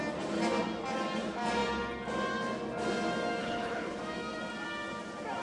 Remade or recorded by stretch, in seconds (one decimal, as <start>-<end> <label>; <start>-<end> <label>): 0.0-3.4 recorded; 3.4-4.0 remade; 4.0-5.4 recorded